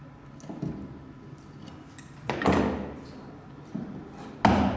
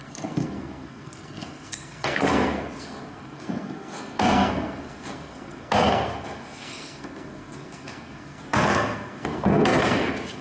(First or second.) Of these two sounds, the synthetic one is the second